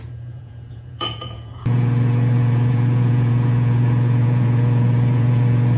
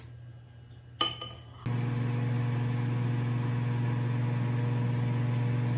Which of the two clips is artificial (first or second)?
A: first